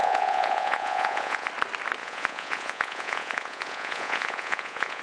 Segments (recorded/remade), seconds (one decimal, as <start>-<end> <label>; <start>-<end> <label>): 0.0-1.5 remade; 1.5-2.0 recorded; 2.0-5.0 remade

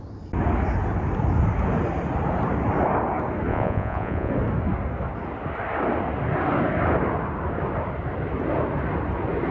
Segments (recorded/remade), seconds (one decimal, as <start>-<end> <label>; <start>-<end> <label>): 0.0-3.5 recorded; 3.5-4.3 remade; 4.3-9.5 recorded